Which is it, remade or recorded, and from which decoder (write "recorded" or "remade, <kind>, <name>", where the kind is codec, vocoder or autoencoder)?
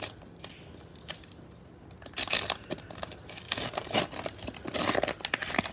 recorded